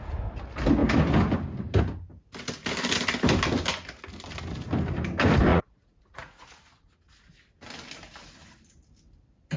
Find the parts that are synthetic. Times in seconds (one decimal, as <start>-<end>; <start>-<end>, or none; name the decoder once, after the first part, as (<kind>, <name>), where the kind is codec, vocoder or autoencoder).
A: 5.5-7.3 (vocoder, Vocos)